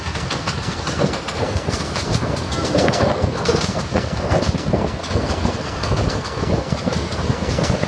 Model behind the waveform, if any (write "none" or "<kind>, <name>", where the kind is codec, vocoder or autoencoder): codec, SNAC